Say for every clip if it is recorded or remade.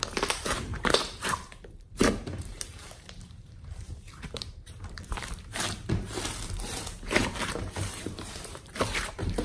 remade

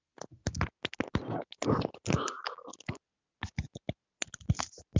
recorded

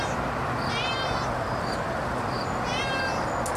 recorded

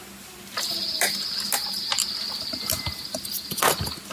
recorded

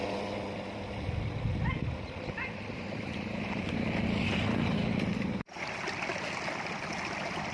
recorded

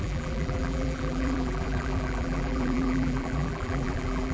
remade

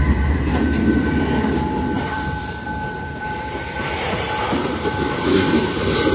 remade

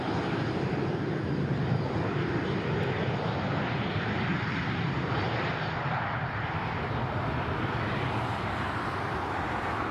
remade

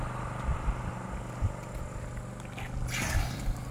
recorded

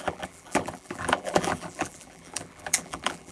remade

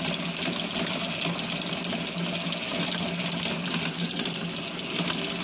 recorded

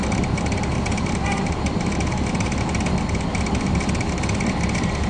recorded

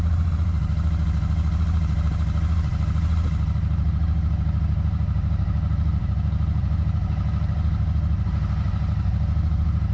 remade